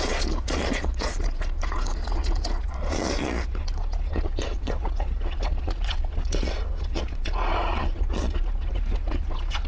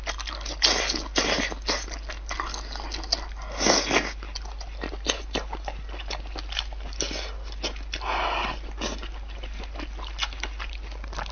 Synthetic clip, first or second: first